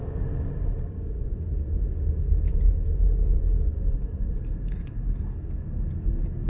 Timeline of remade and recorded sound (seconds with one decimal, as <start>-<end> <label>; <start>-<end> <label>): 0.0-6.5 recorded